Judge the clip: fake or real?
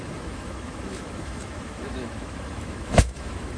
fake